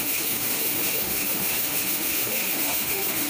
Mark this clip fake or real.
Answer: fake